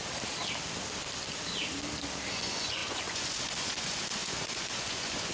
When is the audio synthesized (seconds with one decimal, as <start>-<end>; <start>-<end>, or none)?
2.3-5.3